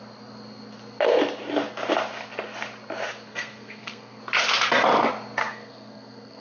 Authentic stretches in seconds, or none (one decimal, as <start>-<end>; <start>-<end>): 0.0-3.3; 4.2-5.4